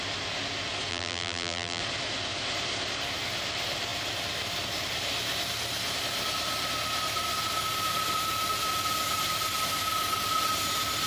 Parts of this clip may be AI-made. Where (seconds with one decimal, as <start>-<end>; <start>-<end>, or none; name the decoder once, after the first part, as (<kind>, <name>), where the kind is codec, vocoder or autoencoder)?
0.9-1.8 (vocoder, BigVGAN v2)